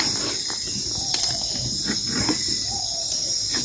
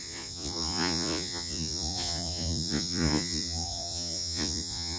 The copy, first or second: second